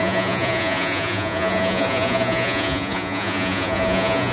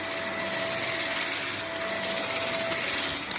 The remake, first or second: first